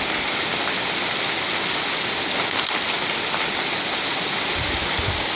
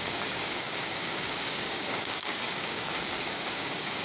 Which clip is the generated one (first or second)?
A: second